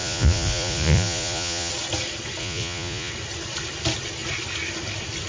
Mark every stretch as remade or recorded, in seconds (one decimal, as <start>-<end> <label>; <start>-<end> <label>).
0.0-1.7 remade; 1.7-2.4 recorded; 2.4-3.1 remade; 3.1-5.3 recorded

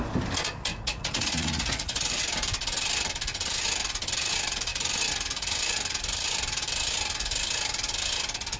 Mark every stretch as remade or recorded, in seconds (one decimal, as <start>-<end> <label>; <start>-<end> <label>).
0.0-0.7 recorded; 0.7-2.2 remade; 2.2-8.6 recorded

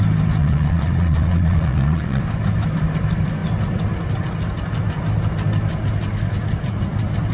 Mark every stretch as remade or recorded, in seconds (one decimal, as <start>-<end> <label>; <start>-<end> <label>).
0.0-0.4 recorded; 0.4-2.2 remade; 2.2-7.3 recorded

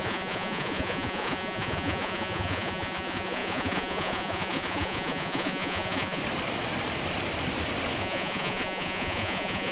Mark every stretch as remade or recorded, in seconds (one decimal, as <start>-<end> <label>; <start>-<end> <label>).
0.0-6.2 remade; 6.2-8.0 recorded; 8.0-9.7 remade

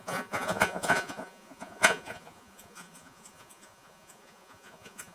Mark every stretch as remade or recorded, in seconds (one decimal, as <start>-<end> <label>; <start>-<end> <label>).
0.0-5.1 remade

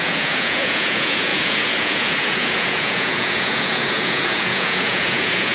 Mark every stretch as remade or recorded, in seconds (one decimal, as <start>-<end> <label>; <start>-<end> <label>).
0.0-5.5 remade